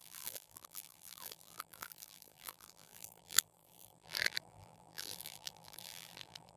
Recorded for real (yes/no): no